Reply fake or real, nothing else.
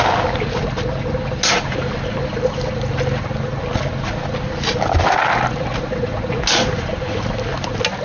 real